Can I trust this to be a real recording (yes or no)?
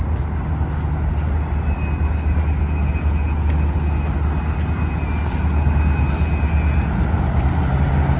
yes